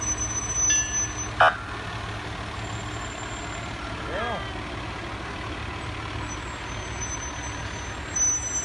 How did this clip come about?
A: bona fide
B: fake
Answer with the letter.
A